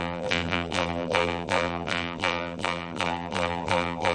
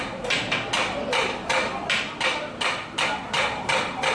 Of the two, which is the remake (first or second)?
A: first